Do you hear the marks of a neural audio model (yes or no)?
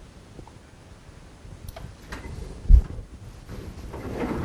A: no